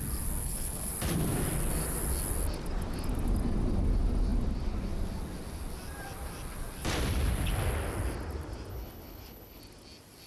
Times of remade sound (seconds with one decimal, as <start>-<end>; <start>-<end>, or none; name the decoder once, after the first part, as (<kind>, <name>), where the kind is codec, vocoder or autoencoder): 0.4-0.9 (codec, HILCodec); 8.7-9.6